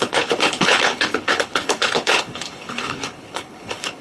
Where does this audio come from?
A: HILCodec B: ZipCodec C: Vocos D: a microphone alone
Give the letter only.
A